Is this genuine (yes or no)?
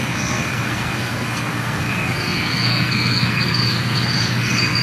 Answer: no